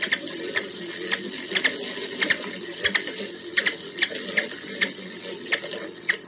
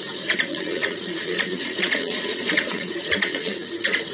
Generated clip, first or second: second